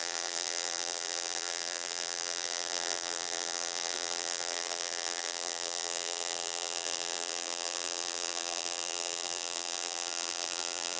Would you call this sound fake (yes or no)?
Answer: yes